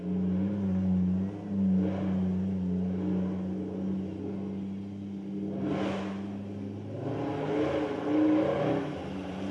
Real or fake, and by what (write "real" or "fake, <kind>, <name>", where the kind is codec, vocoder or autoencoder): real